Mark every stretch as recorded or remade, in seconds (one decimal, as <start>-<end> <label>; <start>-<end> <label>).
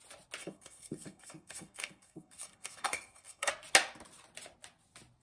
0.0-0.4 recorded; 0.4-3.5 remade; 3.5-5.2 recorded